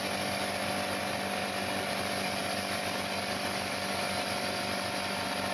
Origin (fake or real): real